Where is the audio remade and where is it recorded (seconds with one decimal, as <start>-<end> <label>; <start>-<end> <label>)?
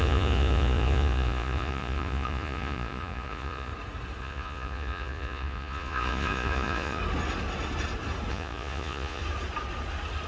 0.0-3.7 remade; 3.7-4.2 recorded; 4.2-7.0 remade; 7.0-8.3 recorded; 8.3-9.2 remade; 9.2-10.3 recorded